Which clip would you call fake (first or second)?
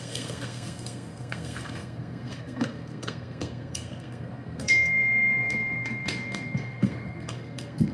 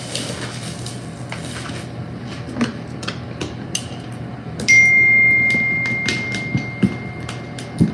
first